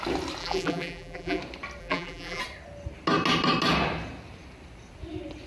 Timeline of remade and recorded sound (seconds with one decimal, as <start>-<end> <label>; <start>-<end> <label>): 0.0-0.4 recorded; 0.4-1.4 remade; 1.4-1.8 recorded; 1.8-2.4 remade; 2.4-5.5 recorded